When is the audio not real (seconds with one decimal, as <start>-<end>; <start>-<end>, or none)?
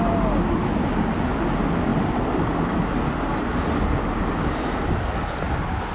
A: none